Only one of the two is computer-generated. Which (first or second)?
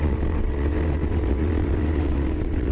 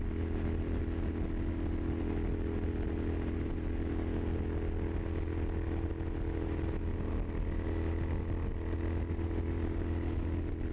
first